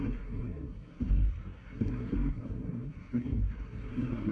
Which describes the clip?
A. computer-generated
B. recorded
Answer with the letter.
A